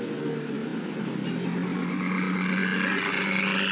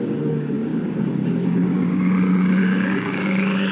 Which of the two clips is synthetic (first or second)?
second